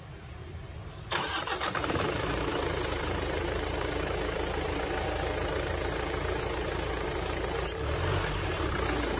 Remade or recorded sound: remade